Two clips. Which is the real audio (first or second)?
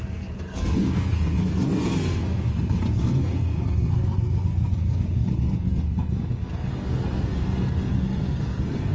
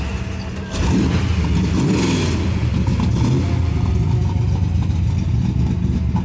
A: second